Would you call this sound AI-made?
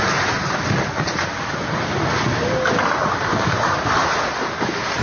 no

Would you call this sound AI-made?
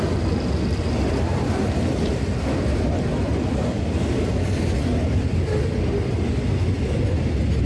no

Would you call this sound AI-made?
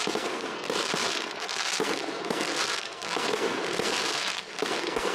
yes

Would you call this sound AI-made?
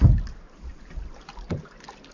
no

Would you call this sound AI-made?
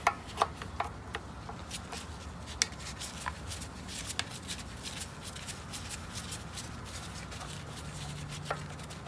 no